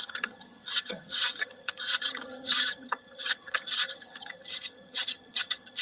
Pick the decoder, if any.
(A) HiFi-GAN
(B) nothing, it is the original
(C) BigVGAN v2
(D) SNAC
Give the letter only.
A